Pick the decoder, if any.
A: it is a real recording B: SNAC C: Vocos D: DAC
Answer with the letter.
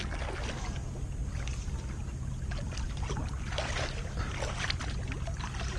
A